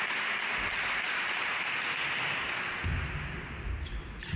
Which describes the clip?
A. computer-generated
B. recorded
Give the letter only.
B